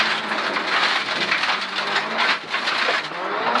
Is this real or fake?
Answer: real